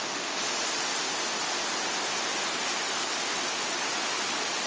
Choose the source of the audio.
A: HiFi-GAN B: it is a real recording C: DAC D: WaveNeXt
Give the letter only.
B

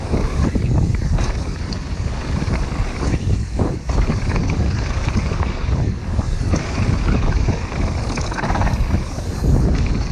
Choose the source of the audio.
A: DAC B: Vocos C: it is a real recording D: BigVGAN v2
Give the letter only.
A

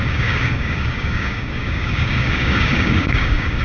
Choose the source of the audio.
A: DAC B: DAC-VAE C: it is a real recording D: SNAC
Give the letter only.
A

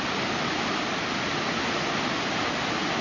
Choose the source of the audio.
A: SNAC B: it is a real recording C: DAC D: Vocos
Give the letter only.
B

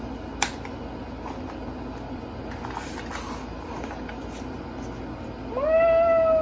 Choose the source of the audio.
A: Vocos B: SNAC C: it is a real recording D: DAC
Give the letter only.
C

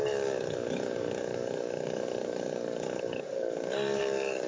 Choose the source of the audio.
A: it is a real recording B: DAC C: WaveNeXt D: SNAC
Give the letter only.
B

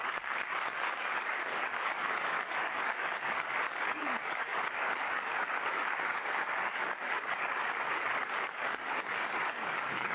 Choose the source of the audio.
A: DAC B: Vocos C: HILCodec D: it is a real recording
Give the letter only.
A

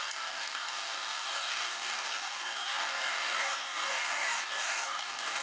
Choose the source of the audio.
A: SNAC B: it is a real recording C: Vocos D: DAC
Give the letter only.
D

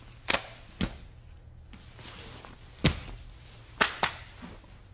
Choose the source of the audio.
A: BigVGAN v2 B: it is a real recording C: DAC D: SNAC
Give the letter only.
B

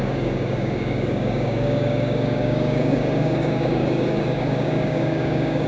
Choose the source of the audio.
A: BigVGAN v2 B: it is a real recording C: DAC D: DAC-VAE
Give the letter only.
C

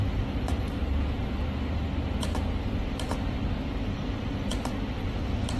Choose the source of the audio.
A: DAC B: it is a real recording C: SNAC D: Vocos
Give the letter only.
B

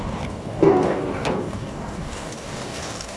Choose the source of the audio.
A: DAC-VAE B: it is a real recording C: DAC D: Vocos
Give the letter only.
C